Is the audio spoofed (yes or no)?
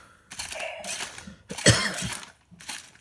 no